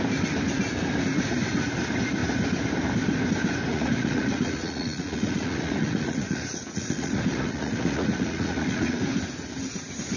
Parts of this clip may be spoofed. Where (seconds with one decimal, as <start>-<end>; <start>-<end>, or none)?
3.7-9.0